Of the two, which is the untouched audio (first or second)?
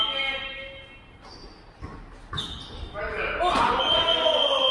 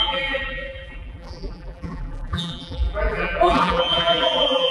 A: first